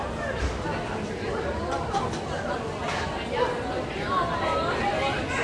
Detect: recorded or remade recorded